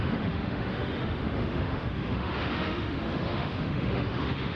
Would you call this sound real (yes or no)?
no